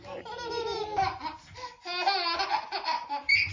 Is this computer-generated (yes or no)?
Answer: no